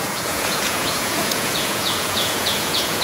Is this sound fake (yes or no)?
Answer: yes